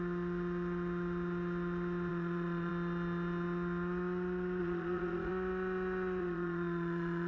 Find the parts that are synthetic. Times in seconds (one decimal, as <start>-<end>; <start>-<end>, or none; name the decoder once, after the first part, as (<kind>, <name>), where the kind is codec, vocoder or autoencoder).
2.1-2.7 (vocoder, Vocos); 4.6-5.3; 6.2-7.3